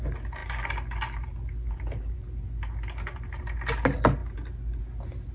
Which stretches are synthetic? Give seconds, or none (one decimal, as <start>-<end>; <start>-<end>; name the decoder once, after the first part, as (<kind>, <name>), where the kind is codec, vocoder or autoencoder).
none